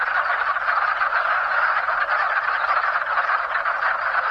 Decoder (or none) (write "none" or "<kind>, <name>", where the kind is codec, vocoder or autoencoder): none